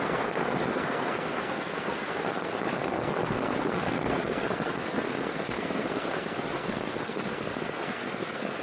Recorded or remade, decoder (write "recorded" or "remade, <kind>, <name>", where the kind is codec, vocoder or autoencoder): remade, codec, SNAC